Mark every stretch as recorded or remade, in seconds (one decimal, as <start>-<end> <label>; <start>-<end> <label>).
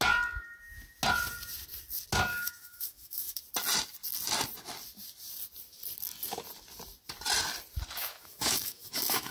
0.0-2.3 recorded; 2.3-3.4 remade; 3.4-8.0 recorded; 8.0-9.3 remade